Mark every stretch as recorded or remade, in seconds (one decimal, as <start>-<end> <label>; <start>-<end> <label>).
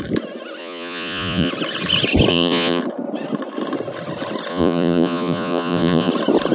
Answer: 0.0-0.6 recorded; 0.6-1.5 remade; 1.5-2.3 recorded; 2.3-2.8 remade; 2.8-4.5 recorded; 4.5-6.1 remade; 6.1-6.5 recorded